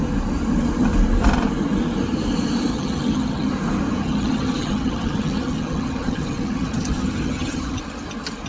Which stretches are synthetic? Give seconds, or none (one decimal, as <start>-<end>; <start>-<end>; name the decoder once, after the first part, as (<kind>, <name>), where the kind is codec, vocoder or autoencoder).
2.7-3.5 (vocoder, HiFi-GAN); 4.0-7.8